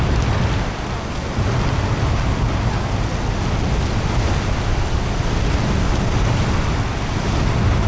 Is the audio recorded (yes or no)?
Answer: yes